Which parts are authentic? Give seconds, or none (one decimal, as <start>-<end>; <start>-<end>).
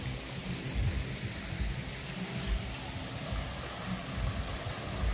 0.0-5.1